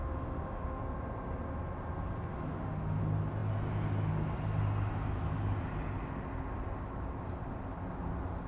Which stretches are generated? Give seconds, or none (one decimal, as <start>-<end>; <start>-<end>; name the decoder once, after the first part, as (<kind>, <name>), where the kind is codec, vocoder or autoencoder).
0.0-0.8 (autoencoder, DAC-VAE); 2.3-3.0